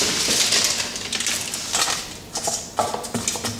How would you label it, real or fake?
real